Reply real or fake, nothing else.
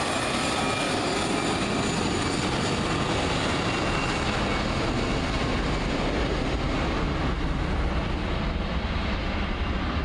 real